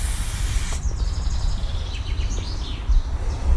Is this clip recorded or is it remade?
recorded